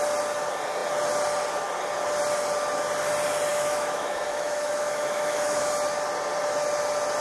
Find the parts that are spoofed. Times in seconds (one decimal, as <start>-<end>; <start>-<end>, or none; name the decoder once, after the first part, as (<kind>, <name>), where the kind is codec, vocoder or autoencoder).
3.5-5.7 (autoencoder, DAC-VAE)